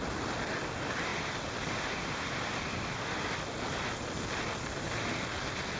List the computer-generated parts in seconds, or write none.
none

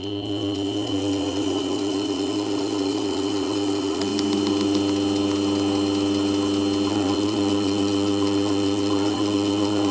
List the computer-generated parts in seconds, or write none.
0.0-4.1 (vocoder, Vocos); 6.9-9.9

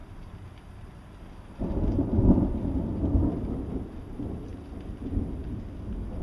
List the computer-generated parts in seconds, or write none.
0.0-2.0 (vocoder, BigVGAN v2)

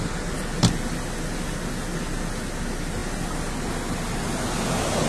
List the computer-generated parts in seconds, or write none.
none

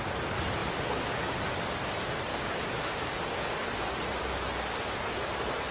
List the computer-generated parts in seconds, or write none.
2.3-3.2 (codec, DAC)